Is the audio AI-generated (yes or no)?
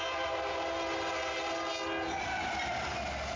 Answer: no